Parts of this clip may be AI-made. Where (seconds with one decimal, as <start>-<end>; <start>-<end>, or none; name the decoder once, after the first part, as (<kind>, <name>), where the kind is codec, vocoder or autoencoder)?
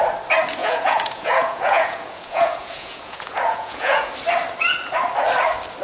0.6-4.1 (vocoder, Vocos)